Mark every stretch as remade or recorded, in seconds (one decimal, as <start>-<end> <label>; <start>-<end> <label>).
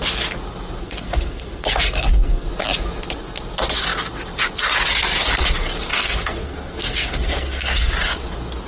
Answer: 0.0-0.8 recorded; 0.8-2.5 remade; 2.5-5.9 recorded; 5.9-7.9 remade; 7.9-8.7 recorded